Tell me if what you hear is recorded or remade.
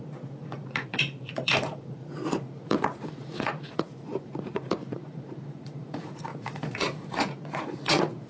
remade